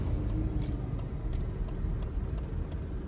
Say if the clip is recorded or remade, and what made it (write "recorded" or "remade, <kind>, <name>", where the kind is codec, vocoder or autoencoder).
recorded